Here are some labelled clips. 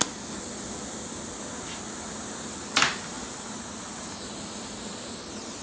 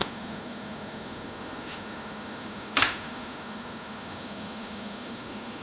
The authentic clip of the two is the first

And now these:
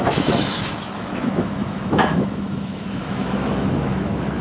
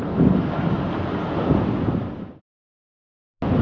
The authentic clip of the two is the second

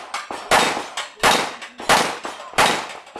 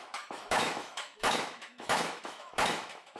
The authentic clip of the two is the first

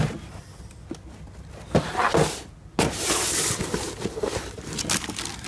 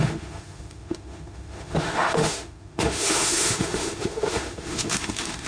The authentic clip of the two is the first